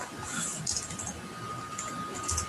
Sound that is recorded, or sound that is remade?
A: recorded